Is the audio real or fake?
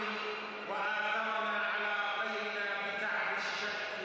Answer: real